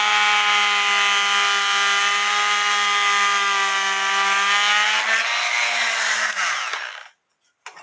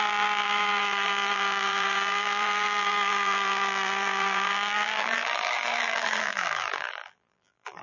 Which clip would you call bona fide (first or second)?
first